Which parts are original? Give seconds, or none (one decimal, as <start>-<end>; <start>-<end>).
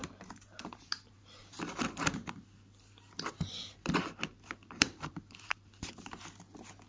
1.6-4.8; 6.2-6.9